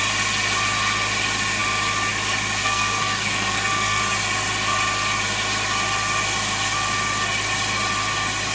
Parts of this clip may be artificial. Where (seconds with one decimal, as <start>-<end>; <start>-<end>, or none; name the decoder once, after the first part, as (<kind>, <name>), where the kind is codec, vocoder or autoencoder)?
2.6-4.0 (codec, SNAC)